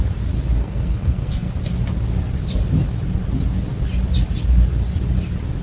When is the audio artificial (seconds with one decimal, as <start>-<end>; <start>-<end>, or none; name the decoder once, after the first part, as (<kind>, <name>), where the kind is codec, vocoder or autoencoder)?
0.6-1.5 (codec, SNAC)